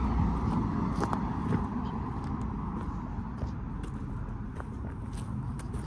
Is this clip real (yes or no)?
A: yes